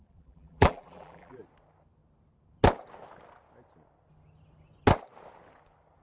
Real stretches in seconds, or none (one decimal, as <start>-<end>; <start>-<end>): 1.4-6.0